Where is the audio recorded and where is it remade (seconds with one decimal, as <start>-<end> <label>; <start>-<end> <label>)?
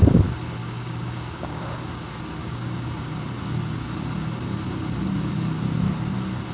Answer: 0.0-0.6 recorded; 0.6-1.8 remade; 1.8-2.4 recorded; 2.4-3.1 remade; 3.1-6.5 recorded